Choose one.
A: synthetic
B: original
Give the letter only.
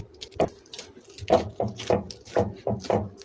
B